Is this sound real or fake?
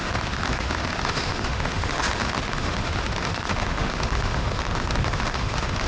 fake